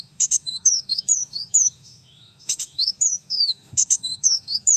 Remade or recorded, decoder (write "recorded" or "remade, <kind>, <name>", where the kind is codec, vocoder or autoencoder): remade, autoencoder, DAC-VAE